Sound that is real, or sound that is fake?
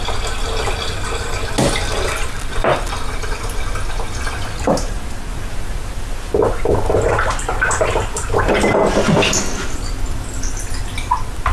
real